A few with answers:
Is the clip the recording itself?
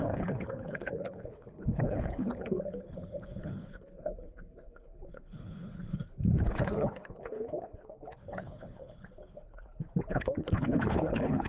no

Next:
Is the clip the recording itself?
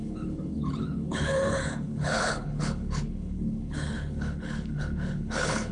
no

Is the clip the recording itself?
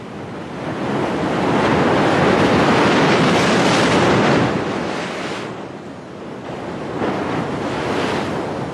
yes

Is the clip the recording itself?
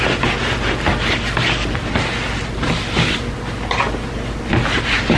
yes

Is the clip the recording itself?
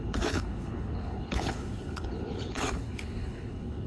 no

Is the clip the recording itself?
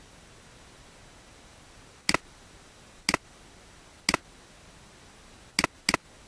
yes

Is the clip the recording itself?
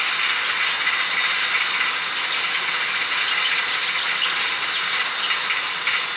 yes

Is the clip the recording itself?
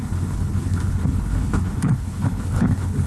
no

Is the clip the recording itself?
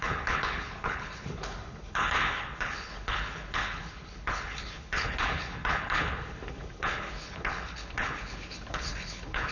no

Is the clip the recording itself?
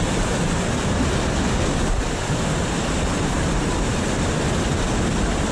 yes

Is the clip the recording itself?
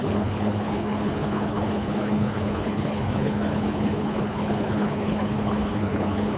no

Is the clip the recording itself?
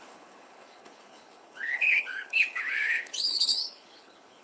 no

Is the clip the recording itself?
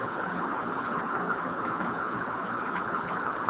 no